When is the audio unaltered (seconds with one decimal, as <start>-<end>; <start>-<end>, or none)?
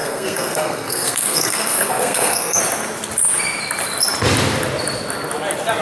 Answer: 2.6-5.8